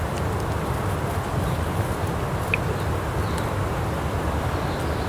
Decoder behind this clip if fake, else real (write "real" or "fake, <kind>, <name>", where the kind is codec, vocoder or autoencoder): real